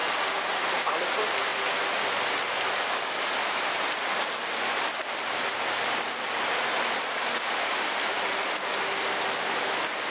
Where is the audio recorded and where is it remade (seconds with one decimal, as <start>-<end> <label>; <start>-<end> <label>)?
0.0-10.1 recorded